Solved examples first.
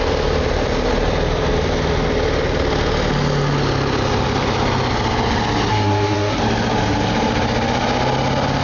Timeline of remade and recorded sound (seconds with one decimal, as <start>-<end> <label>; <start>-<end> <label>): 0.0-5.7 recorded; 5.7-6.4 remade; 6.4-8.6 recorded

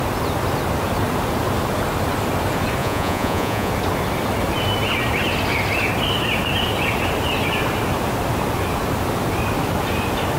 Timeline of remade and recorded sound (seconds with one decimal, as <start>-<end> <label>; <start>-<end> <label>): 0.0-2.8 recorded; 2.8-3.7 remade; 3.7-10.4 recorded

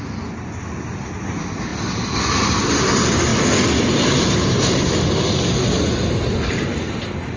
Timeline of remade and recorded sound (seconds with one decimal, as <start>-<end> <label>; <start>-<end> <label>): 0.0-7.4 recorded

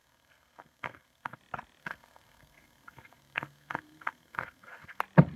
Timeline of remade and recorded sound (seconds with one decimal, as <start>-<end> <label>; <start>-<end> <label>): 0.0-1.4 remade; 1.4-1.8 recorded; 1.8-5.0 remade; 5.0-5.4 recorded

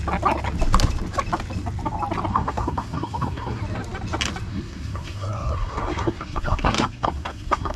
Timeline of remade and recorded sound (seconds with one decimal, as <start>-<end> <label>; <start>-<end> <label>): 0.0-2.3 recorded; 2.3-3.6 remade; 3.6-4.5 recorded; 4.5-7.8 remade

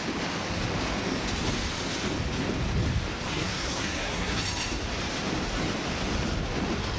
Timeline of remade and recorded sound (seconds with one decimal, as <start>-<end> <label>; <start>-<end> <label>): 0.0-3.3 recorded; 3.3-4.4 remade; 4.4-7.0 recorded

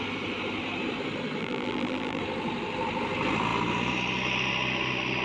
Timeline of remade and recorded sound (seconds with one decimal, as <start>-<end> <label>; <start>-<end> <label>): 0.0-1.4 recorded; 1.4-2.2 remade; 2.2-5.2 recorded

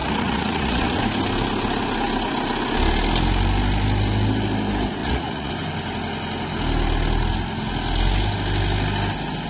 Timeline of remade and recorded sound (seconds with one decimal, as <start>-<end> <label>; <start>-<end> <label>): 0.0-1.0 remade; 1.0-5.0 recorded; 5.0-5.5 remade; 5.5-9.5 recorded